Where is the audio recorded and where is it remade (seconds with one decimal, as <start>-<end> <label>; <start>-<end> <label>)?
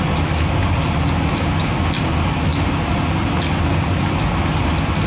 0.0-5.1 recorded